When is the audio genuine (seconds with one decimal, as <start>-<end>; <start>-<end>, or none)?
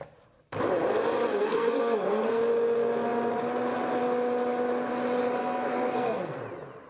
0.0-1.3; 2.4-5.4; 6.4-6.9